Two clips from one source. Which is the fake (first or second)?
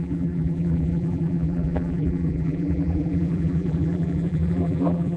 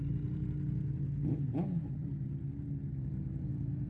first